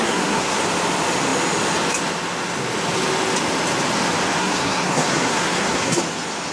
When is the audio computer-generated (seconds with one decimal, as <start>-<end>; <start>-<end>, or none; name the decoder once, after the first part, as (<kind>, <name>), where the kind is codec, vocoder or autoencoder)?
0.0-0.6 (codec, SNAC); 4.4-6.0